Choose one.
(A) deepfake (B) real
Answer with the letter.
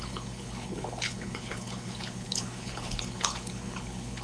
A